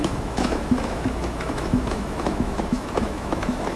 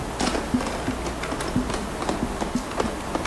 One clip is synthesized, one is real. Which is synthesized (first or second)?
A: first